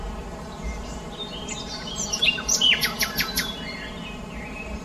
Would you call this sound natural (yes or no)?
no